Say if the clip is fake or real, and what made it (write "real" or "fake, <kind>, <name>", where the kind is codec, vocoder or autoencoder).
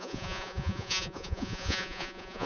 fake, vocoder, Vocos